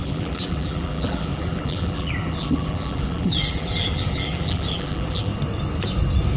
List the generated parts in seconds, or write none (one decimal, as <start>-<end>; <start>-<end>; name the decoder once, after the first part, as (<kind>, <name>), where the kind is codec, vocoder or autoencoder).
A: 0.0-5.3 (vocoder, BigVGAN v2)